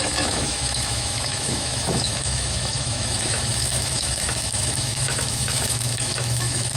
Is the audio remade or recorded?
remade